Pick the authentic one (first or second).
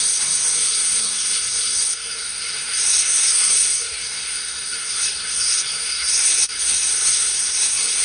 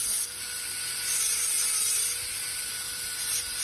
second